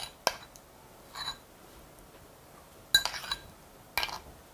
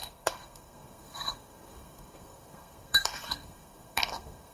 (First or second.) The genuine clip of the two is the first